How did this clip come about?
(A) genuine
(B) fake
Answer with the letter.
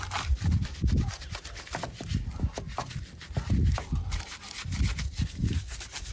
A